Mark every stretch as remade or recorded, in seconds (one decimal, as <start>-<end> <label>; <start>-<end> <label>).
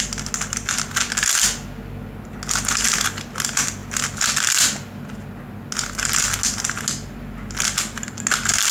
0.0-8.7 recorded